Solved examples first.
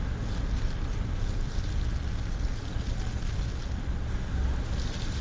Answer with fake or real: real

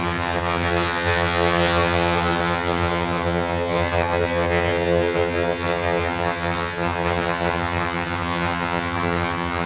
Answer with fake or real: fake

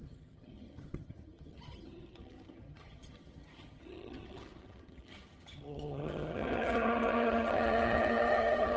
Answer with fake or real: fake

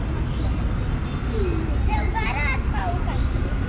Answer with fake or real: real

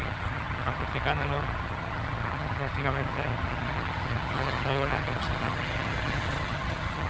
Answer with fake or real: fake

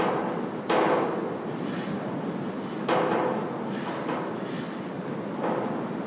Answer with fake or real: real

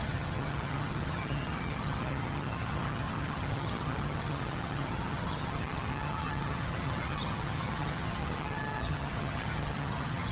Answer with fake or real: fake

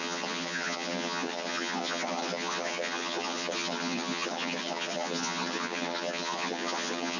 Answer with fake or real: fake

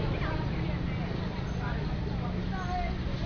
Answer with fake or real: real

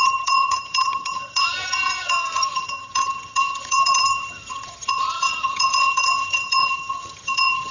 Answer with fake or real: fake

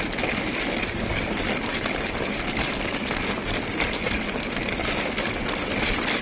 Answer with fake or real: real